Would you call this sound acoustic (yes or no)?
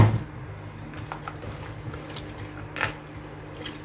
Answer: yes